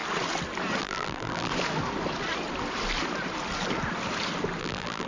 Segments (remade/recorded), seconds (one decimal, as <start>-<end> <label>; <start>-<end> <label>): 0.0-0.8 recorded; 0.8-1.5 remade; 1.5-4.6 recorded; 4.6-5.1 remade